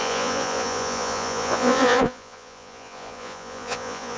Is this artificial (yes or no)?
yes